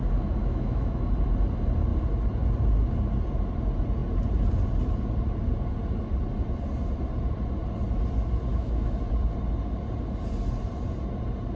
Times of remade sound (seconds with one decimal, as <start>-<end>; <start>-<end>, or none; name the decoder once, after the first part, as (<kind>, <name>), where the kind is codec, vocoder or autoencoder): 0.4-1.1 (autoencoder, DAC-VAE); 8.5-9.0